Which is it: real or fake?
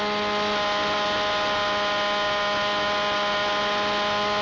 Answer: real